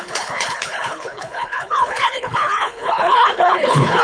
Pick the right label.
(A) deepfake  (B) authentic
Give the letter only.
A